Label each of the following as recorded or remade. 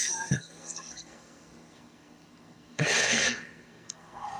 remade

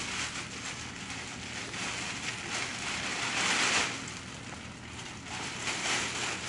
recorded